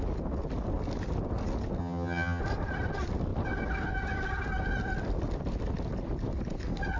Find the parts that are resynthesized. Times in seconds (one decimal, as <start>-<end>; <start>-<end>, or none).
1.8-2.4